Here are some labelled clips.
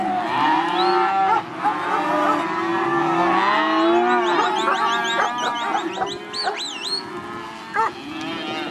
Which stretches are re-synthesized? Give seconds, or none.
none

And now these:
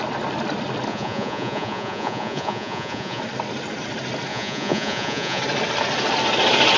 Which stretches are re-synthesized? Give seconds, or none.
0.9-3.2 (vocoder, Vocos); 4.3-5.4

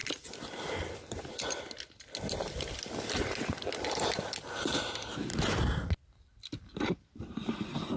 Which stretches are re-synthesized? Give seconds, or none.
none

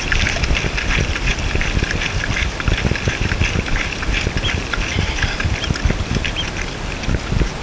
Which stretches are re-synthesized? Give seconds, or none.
none

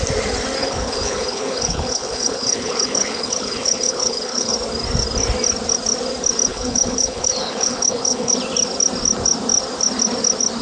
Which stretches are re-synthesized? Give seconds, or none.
0.6-4.5 (codec, HILCodec); 6.5-8.3

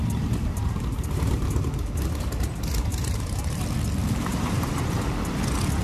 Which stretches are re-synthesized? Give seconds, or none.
0.0-2.2 (vocoder, BigVGAN v2); 2.9-3.6; 4.0-4.7

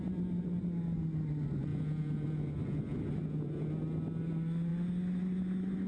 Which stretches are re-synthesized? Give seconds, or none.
1.7-2.5 (vocoder, Vocos)